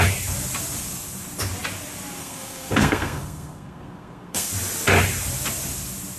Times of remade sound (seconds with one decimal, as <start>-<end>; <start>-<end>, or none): 2.2-4.5